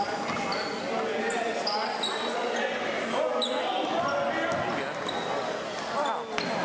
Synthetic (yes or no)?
no